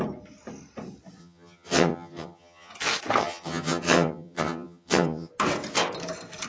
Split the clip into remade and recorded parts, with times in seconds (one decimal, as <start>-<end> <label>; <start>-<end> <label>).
0.0-1.2 recorded; 1.2-2.7 remade; 2.7-3.2 recorded; 3.2-5.3 remade; 5.3-6.5 recorded